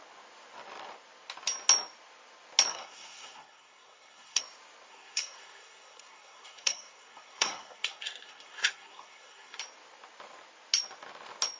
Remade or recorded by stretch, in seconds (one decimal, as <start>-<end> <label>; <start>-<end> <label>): 0.0-2.7 recorded; 2.7-4.4 remade; 4.4-4.9 recorded; 4.9-9.6 remade; 9.6-11.6 recorded